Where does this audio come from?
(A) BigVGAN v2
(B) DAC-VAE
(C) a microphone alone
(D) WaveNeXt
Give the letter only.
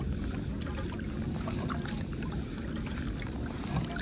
C